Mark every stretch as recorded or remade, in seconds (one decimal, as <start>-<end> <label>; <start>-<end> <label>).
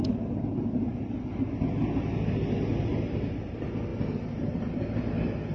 0.0-5.5 recorded